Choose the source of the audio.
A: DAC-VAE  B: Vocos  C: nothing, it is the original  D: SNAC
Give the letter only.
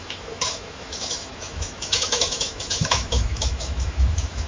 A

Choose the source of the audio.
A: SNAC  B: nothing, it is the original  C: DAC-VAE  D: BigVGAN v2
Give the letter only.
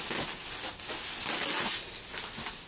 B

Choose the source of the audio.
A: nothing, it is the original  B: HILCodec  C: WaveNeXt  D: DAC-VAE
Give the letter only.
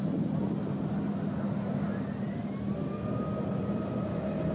A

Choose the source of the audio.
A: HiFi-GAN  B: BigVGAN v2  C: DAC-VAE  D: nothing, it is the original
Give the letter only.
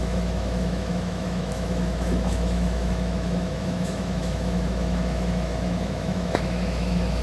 C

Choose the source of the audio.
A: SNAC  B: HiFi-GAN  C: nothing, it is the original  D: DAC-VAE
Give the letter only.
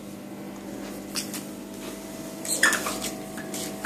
C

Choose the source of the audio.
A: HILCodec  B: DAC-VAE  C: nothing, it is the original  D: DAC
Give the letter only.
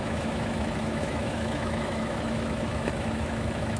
B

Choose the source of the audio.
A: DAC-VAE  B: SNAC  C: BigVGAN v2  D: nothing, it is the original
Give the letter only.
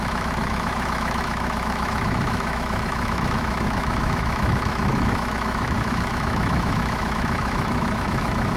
A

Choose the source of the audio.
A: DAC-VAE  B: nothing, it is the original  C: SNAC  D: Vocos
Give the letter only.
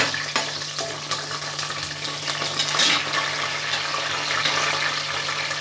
B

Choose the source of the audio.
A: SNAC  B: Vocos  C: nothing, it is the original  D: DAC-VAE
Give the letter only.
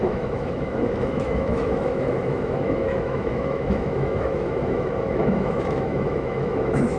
D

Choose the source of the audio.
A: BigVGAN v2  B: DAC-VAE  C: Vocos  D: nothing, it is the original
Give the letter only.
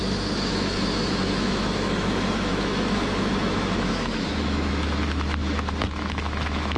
B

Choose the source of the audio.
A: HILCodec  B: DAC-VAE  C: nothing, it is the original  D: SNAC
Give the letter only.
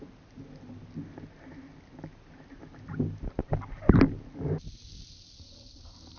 C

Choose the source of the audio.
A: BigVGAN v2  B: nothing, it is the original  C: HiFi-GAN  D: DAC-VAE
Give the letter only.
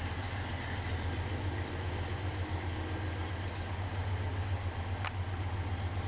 B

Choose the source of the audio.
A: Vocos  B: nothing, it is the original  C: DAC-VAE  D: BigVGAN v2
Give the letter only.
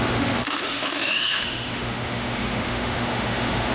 C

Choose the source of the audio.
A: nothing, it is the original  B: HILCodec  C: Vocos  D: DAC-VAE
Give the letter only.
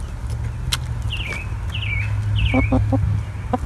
A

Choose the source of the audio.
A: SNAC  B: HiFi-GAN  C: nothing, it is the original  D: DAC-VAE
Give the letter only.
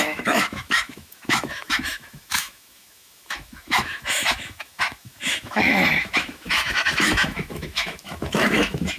D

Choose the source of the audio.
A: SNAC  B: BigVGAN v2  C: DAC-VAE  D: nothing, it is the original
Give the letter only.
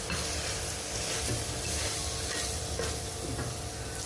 D